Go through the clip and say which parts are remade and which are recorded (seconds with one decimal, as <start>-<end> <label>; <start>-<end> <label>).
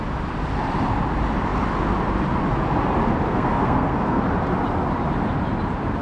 0.0-3.3 recorded; 3.3-4.2 remade; 4.2-6.0 recorded